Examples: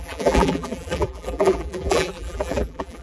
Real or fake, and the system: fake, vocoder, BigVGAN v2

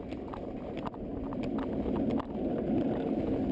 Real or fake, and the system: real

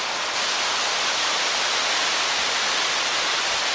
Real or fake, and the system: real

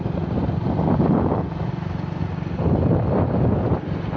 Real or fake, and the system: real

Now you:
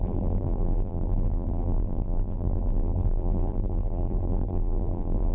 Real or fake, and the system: fake, vocoder, BigVGAN v2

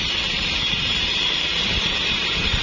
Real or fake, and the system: fake, vocoder, BigVGAN v2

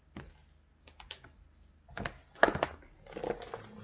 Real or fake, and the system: real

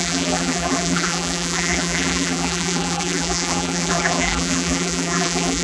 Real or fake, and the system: fake, vocoder, BigVGAN v2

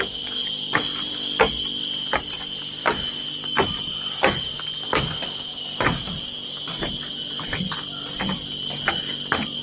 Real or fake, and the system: real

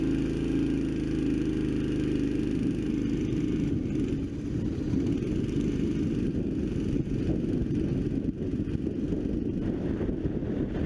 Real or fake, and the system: real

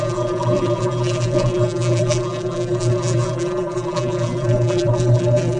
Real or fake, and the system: fake, vocoder, BigVGAN v2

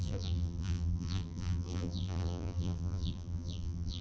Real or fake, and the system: fake, vocoder, BigVGAN v2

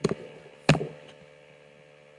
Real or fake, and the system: real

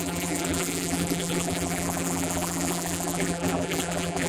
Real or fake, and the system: fake, vocoder, BigVGAN v2